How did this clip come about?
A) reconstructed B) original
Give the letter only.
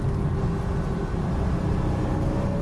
B